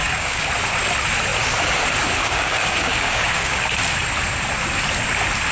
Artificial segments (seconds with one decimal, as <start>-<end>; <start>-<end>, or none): 0.0-0.5; 2.2-3.6